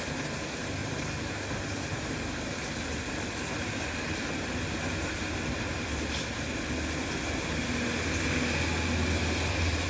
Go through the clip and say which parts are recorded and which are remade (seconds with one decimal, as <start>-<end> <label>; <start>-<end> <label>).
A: 0.0-0.8 recorded; 0.8-1.3 remade; 1.3-9.9 recorded